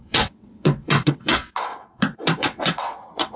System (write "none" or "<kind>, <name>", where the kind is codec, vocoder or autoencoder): vocoder, WaveNeXt